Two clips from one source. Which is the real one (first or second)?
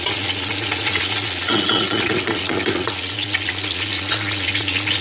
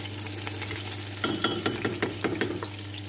second